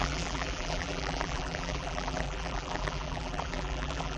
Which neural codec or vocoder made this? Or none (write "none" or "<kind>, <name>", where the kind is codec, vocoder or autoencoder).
vocoder, BigVGAN v2